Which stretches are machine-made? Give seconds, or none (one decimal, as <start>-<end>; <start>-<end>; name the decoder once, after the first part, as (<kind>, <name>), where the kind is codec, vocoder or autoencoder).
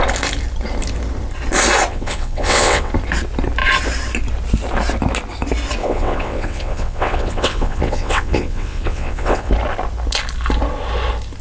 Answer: 1.9-2.9 (vocoder, WaveNeXt); 5.8-9.5